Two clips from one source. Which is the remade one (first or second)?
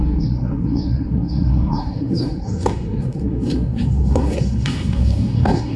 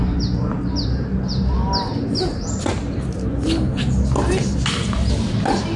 first